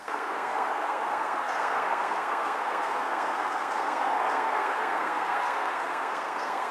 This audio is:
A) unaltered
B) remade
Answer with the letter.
B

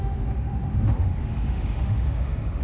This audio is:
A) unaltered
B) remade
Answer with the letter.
B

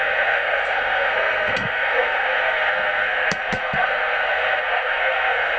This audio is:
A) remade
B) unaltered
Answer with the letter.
A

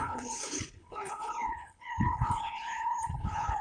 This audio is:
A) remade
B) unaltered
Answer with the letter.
A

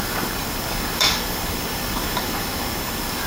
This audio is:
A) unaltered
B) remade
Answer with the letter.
B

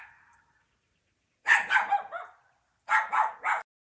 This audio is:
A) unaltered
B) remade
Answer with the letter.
A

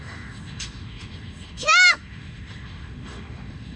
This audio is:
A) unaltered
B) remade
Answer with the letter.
B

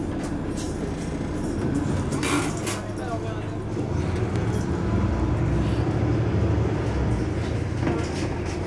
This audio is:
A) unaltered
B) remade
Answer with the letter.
A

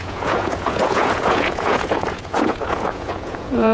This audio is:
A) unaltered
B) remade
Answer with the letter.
B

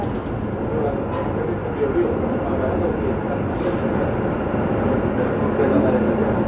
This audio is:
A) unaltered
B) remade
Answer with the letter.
A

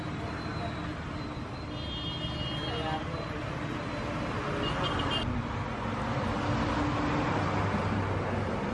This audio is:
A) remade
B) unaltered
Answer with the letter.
B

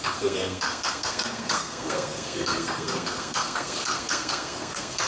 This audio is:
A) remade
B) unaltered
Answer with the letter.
A